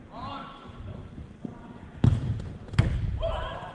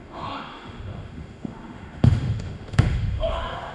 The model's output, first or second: second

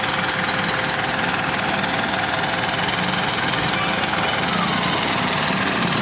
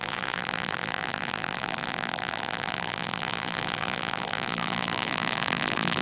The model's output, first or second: second